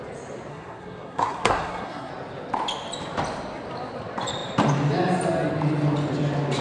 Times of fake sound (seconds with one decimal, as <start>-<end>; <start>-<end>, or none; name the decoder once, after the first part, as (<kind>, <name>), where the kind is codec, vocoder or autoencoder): 0.5-2.1 (codec, SNAC)